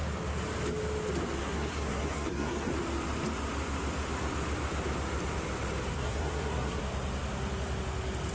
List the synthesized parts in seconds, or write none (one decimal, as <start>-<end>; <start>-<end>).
1.4-2.7; 5.9-6.8